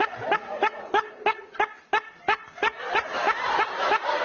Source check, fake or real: real